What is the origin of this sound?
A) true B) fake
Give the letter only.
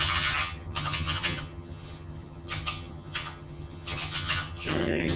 B